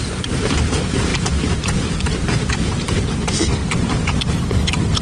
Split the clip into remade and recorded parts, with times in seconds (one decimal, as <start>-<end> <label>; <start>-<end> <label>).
0.0-5.0 remade